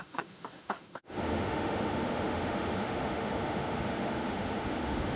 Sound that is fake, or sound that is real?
fake